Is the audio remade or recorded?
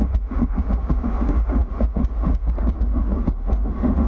remade